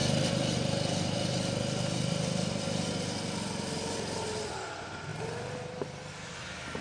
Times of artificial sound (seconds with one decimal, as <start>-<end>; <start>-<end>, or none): none

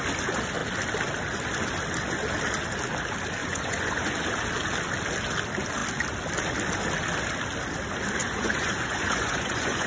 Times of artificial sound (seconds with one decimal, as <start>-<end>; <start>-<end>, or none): 3.4-4.1; 8.2-9.9

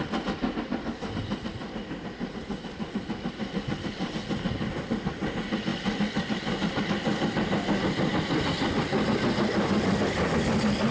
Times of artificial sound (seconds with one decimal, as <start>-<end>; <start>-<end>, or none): none